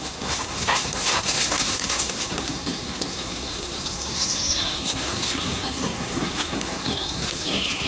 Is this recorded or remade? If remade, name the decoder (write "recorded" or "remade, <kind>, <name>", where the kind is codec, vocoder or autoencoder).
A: remade, codec, SNAC